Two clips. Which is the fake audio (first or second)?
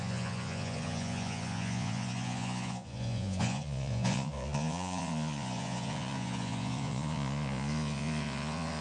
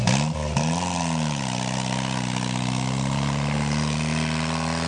first